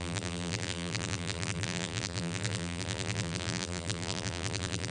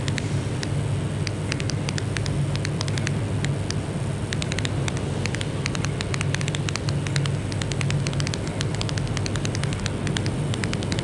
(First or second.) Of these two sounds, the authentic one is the second